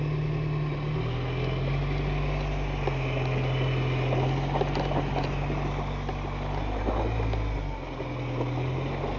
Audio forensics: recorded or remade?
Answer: recorded